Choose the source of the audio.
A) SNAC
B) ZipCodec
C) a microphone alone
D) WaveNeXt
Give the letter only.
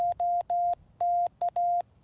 C